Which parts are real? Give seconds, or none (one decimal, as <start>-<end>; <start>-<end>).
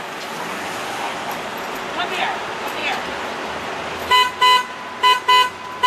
0.0-5.9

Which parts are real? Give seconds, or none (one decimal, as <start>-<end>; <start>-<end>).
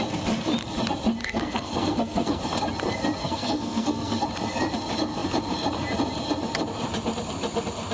0.0-1.2; 2.4-3.2; 4.2-7.9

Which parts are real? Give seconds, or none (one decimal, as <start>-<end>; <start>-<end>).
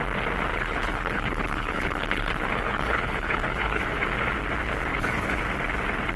0.0-0.5; 3.8-4.9; 5.4-6.2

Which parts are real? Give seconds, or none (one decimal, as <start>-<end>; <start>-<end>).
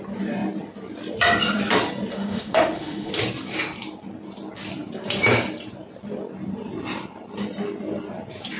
0.0-2.1; 3.1-8.6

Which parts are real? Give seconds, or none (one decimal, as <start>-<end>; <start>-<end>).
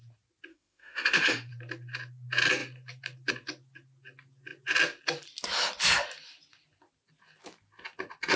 0.0-0.5; 1.5-8.4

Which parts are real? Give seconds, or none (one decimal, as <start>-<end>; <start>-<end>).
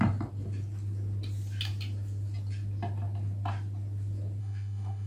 0.0-4.4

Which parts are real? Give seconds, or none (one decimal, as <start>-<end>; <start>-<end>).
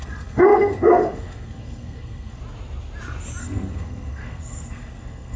2.4-3.4